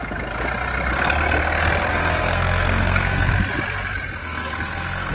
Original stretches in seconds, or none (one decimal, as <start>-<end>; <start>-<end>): 0.0-1.9; 3.3-4.2